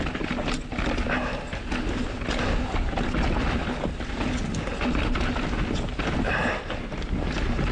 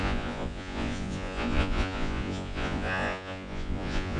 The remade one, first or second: second